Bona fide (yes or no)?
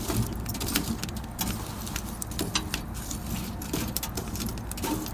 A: yes